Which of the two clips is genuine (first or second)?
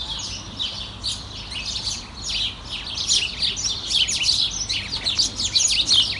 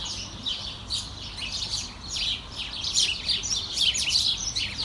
first